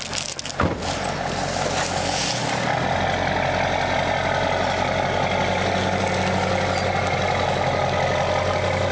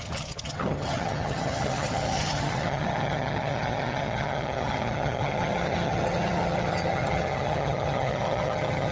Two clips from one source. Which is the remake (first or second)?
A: second